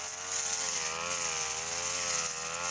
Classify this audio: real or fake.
real